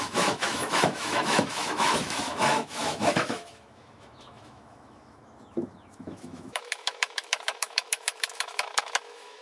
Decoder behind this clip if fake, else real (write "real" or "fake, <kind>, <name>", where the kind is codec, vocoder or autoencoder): fake, autoencoder, DAC-VAE